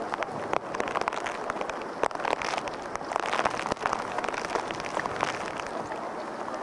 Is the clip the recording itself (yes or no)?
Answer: yes